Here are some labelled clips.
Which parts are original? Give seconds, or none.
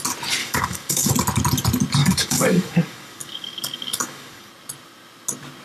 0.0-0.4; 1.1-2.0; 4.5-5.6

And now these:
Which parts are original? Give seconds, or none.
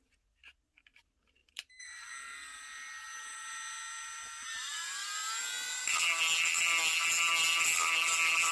0.0-1.4; 2.1-8.5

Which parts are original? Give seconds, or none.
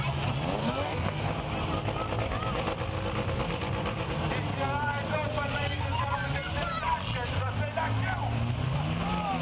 0.0-0.6; 1.2-9.4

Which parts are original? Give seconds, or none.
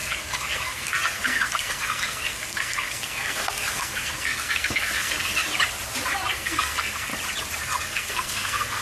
5.4-6.3; 7.1-7.6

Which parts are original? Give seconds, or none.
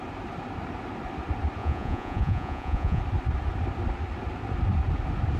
0.0-1.6; 3.0-5.4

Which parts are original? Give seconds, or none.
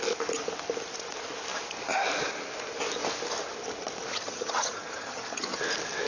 0.0-4.1; 5.6-6.1